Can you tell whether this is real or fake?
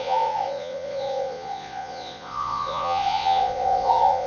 fake